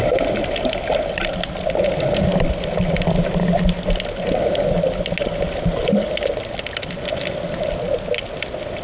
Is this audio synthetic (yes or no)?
no